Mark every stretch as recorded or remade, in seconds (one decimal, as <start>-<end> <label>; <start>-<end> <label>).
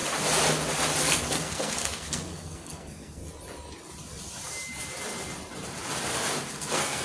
0.0-1.0 recorded; 1.0-3.2 remade; 3.2-6.5 recorded; 6.5-7.0 remade